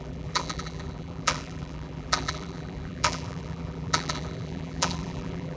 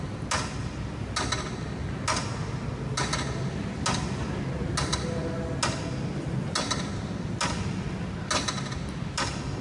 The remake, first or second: first